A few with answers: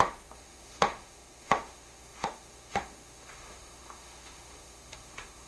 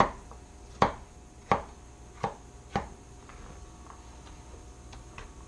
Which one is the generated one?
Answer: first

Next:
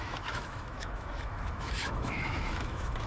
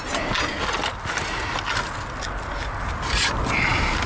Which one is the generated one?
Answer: first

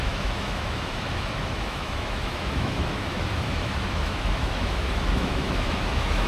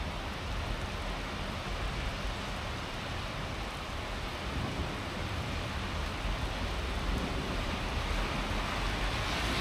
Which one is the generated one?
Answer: first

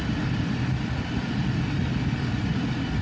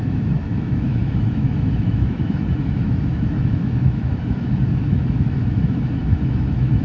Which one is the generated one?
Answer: second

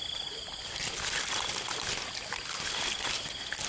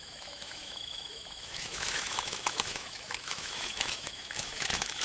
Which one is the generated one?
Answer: second